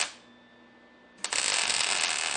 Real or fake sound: real